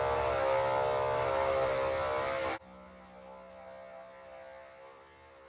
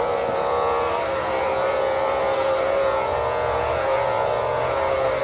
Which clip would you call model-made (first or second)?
second